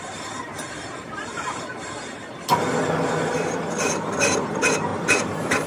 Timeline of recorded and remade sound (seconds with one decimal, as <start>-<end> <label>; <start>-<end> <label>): 0.0-1.7 remade; 1.7-3.3 recorded; 3.3-5.7 remade